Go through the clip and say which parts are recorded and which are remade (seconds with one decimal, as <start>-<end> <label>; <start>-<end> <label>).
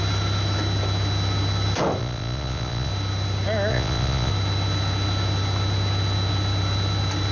0.0-2.0 recorded; 2.0-2.9 remade; 2.9-3.7 recorded; 3.7-4.3 remade; 4.3-7.3 recorded